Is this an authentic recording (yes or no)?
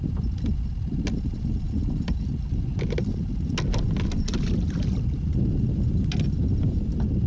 yes